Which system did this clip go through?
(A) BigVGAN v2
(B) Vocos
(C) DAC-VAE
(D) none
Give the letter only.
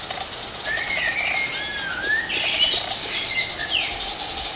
D